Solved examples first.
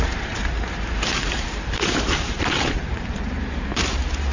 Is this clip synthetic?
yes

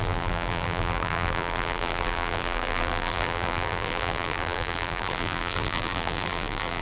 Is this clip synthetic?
yes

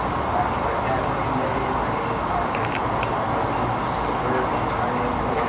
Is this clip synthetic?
no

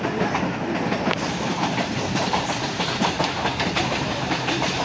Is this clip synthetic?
yes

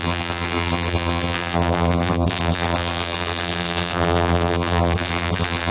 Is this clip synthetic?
yes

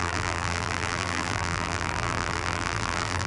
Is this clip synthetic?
yes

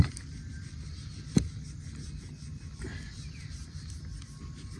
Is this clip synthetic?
no